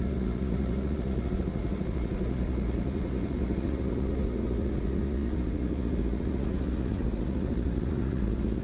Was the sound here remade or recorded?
remade